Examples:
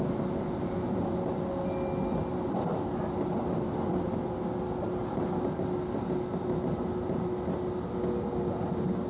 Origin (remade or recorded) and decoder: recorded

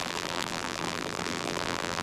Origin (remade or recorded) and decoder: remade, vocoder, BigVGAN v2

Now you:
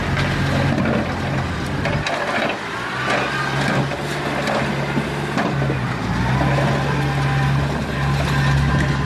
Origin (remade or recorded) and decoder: recorded